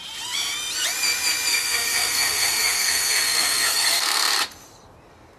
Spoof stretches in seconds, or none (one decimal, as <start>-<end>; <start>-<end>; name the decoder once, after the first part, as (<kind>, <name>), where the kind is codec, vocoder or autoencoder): 1.5-4.3 (codec, SNAC)